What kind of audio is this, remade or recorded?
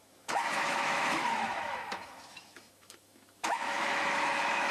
remade